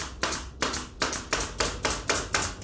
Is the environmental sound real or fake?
real